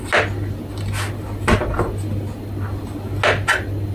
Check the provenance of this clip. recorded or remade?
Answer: recorded